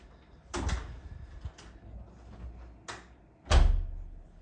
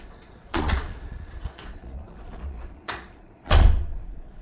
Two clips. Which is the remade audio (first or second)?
second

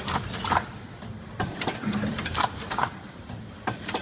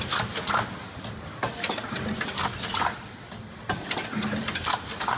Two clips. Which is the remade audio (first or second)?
first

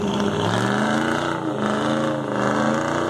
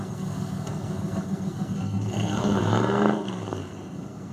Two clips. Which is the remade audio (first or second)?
second